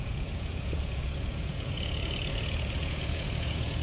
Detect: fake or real fake